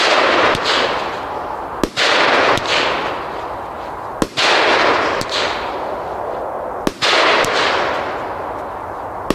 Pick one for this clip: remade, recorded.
recorded